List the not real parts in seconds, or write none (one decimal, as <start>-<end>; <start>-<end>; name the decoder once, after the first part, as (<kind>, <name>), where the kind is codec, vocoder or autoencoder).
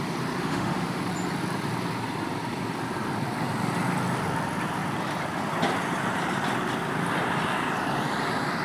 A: 0.4-1.0 (autoencoder, DAC-VAE)